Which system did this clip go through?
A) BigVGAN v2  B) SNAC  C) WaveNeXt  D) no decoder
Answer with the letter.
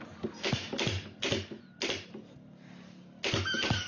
D